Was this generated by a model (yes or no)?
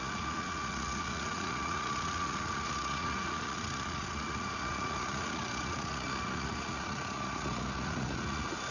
yes